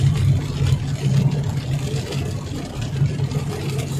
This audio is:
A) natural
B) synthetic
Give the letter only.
A